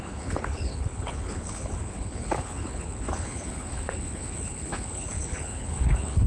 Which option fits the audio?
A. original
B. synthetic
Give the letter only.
B